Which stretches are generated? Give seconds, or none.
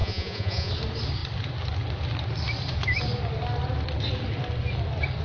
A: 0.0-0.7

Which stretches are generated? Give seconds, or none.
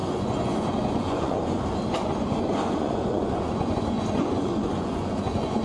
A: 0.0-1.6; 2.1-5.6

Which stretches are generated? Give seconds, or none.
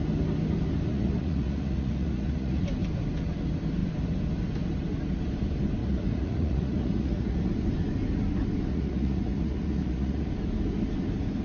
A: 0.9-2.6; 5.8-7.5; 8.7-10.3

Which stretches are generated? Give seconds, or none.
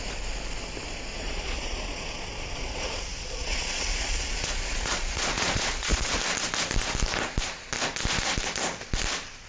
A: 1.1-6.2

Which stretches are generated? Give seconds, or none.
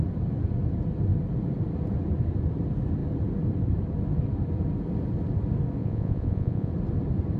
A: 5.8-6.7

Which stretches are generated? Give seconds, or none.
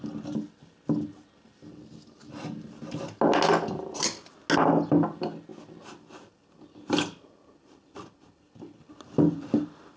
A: none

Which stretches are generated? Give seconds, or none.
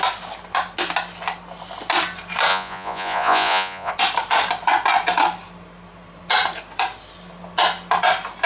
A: 2.5-3.9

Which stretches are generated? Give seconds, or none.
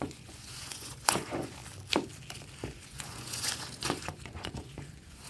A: 0.0-1.6; 2.6-5.3